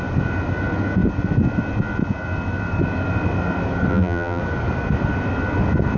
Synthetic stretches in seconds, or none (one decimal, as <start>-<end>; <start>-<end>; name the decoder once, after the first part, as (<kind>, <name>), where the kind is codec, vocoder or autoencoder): 3.9-4.4 (vocoder, BigVGAN v2)